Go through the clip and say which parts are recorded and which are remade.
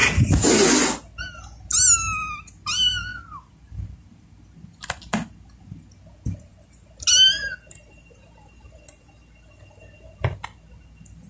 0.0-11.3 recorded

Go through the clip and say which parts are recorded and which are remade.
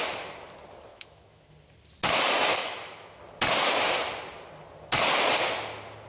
0.0-0.9 recorded; 0.9-1.5 remade; 1.5-2.6 recorded; 2.6-3.2 remade; 3.2-6.1 recorded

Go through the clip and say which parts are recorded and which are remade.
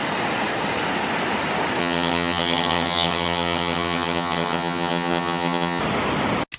0.0-1.8 recorded; 1.8-5.8 remade; 5.8-6.6 recorded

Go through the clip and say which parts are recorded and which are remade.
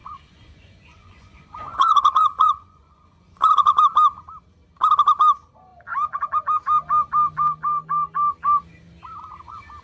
0.0-3.8 remade; 3.8-9.8 recorded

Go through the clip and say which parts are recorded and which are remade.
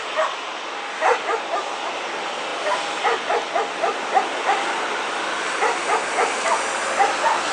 0.0-7.5 recorded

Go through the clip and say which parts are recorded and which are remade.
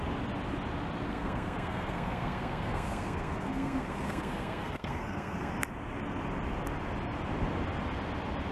0.0-1.1 recorded; 1.1-5.5 remade; 5.5-8.5 recorded